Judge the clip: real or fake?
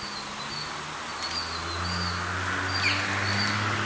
real